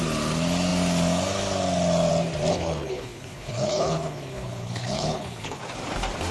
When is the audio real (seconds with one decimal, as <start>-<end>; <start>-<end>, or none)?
0.0-2.5; 5.6-6.3